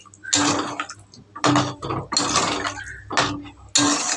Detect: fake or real real